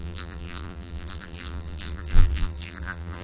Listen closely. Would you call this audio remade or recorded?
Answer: remade